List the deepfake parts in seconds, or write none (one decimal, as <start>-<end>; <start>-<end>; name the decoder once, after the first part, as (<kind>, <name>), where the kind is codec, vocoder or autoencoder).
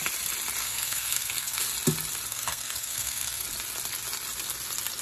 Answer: 0.6-1.6 (codec, SNAC); 2.3-3.4